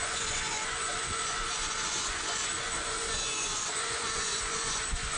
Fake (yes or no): yes